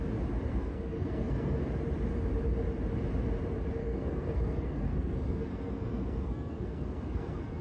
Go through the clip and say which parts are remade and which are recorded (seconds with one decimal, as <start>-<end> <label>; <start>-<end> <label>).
0.0-0.5 recorded; 0.5-1.6 remade; 1.6-3.8 recorded; 3.8-7.6 remade